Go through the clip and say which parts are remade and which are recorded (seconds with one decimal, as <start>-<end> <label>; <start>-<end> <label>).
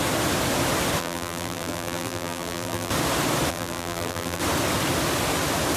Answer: 0.0-1.0 recorded; 1.0-2.9 remade; 2.9-3.5 recorded; 3.5-4.4 remade; 4.4-5.8 recorded